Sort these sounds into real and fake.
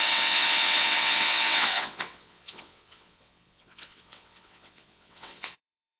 fake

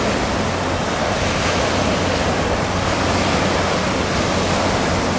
real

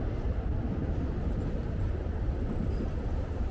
fake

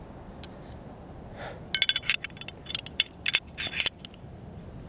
real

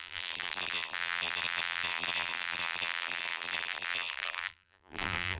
fake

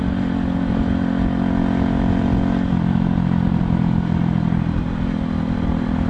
real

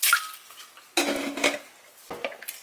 real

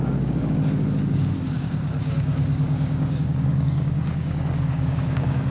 fake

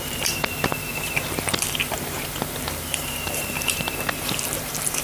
fake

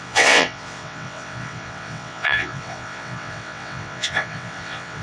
fake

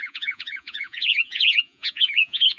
fake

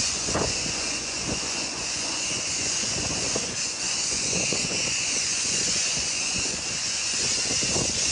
fake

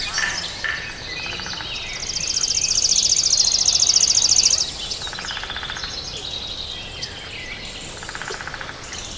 real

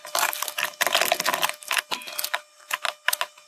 real